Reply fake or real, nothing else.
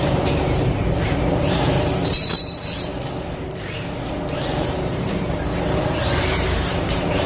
fake